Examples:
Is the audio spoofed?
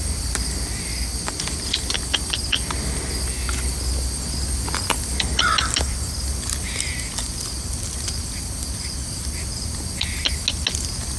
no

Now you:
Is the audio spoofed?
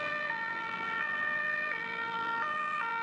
yes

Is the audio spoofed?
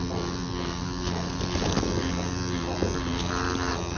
no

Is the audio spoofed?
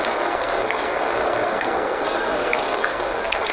yes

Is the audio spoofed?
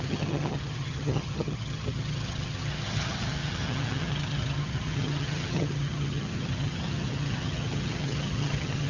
yes